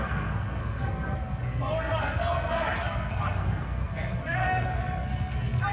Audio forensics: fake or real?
fake